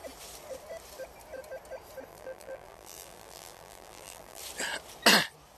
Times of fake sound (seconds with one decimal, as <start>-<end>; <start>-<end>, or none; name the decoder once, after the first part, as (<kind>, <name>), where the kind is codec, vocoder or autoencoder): 2.1-4.4 (vocoder, BigVGAN v2)

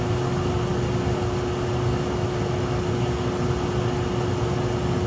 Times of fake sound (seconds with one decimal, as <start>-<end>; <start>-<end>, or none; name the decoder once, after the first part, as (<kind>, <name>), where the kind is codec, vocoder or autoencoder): none

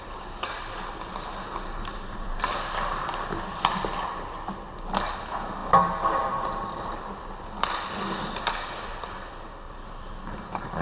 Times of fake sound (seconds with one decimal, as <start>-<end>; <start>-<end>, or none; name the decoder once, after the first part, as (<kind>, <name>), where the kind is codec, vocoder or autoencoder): none

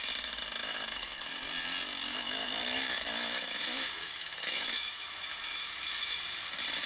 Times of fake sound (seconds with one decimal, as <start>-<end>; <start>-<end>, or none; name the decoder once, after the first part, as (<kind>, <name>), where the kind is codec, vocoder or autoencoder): 0.6-1.3 (autoencoder, DAC-VAE); 2.1-6.2

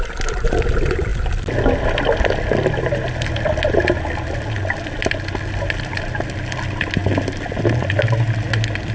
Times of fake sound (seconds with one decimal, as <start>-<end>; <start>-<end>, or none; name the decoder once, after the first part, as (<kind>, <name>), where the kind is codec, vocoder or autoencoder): none

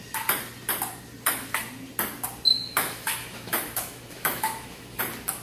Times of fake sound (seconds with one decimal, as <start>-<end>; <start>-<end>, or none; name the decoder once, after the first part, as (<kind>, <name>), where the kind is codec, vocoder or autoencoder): 2.5-5.0 (autoencoder, DAC-VAE)

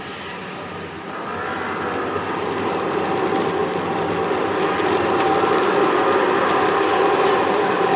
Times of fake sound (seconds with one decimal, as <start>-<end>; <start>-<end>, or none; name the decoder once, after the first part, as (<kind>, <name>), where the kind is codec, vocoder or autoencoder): none